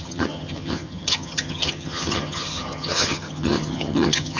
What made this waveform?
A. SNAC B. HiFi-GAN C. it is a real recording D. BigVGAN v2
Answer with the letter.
B